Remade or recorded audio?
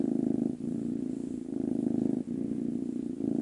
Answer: recorded